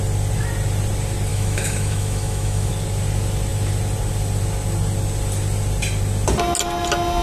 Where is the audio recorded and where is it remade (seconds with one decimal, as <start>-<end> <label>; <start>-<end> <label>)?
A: 0.0-1.3 recorded; 1.3-2.7 remade; 2.7-7.2 recorded